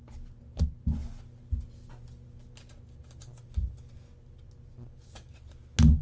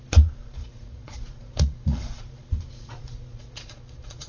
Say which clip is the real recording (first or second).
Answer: first